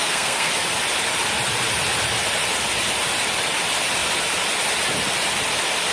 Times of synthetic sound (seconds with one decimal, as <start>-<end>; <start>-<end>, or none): 0.0-0.5